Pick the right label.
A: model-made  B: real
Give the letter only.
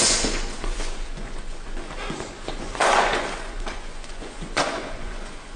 A